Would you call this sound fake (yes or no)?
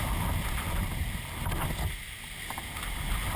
no